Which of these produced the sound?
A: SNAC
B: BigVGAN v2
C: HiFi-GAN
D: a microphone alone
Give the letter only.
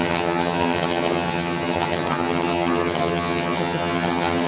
C